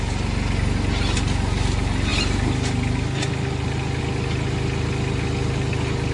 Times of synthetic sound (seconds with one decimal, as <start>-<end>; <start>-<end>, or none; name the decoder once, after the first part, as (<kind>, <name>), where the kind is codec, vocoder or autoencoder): none